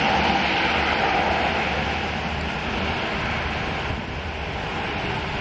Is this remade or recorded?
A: recorded